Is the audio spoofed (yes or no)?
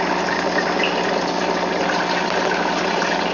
no